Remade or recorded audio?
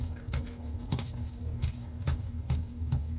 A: remade